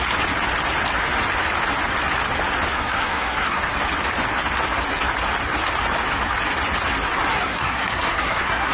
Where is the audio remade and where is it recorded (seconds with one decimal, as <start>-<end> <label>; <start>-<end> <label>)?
0.0-2.7 recorded; 2.7-3.6 remade; 3.6-7.3 recorded; 7.3-8.7 remade